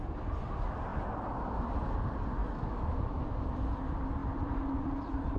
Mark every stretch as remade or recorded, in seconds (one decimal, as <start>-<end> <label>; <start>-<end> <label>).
0.0-2.4 recorded; 2.4-3.0 remade; 3.0-5.4 recorded